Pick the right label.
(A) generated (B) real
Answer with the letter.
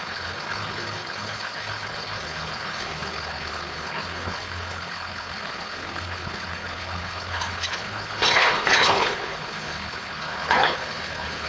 A